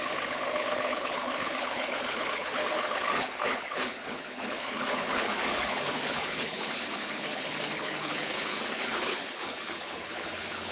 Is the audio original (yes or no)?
no